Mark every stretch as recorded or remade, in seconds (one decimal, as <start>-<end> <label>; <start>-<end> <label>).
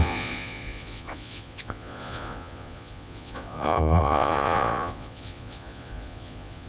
0.0-6.7 remade